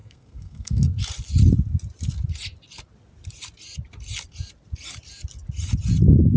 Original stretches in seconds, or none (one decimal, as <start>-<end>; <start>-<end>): 1.0-6.4